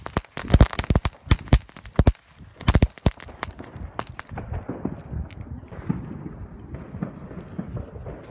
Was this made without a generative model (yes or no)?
yes